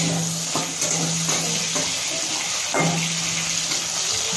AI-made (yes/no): no